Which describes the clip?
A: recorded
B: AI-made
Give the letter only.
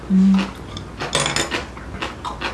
A